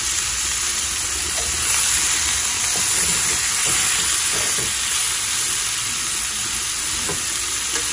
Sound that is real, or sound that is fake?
real